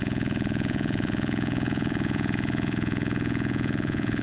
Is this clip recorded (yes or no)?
no